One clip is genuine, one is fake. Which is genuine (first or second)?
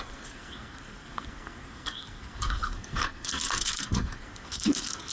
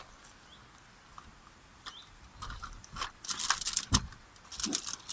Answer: second